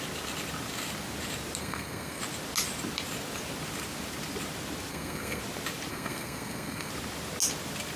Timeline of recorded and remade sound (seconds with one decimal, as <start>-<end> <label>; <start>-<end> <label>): 0.0-1.6 recorded; 1.6-2.2 remade; 2.2-4.9 recorded; 4.9-5.4 remade; 5.4-5.9 recorded; 5.9-6.9 remade; 6.9-8.0 recorded